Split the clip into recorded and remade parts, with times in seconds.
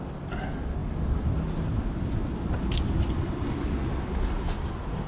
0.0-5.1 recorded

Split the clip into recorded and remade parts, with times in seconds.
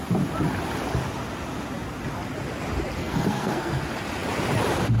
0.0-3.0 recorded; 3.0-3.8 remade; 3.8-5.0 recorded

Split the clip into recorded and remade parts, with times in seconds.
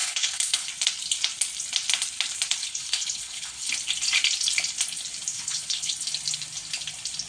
0.0-0.7 remade; 0.7-2.6 recorded; 2.6-3.7 remade; 3.7-5.3 recorded; 5.3-5.9 remade; 5.9-7.3 recorded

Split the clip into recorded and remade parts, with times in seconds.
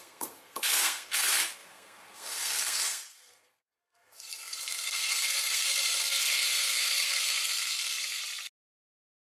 0.0-8.2 remade; 8.2-8.7 recorded; 8.7-9.2 remade